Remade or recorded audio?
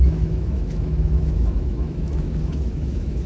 remade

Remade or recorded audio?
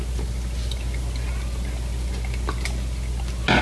recorded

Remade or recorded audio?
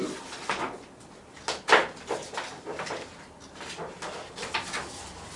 recorded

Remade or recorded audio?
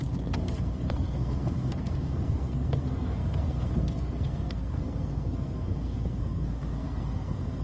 remade